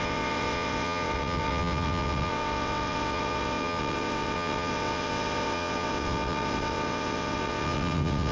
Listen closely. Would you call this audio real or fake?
fake